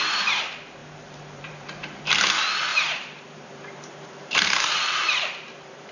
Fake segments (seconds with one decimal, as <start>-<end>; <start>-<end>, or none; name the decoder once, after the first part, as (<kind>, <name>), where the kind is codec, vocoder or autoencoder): 0.8-2.0 (vocoder, BigVGAN v2); 2.7-5.9